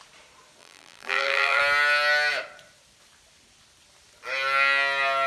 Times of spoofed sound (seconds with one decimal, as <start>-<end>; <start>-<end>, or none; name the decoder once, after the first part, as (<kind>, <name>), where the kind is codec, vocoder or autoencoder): 0.6-1.6 (vocoder, BigVGAN v2)